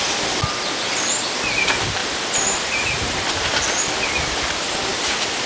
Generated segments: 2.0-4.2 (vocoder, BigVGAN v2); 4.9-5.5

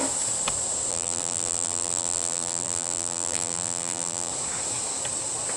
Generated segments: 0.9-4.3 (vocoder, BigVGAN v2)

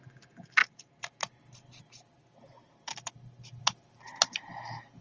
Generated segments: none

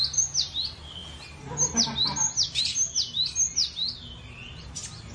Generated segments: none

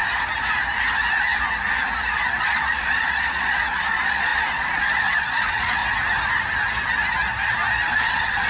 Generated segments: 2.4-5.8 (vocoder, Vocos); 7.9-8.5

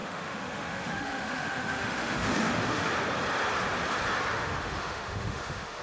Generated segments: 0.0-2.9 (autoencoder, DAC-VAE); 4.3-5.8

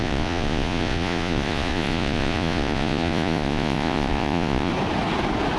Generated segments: 0.0-4.7 (vocoder, Vocos)